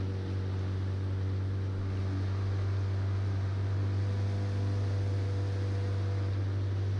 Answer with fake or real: real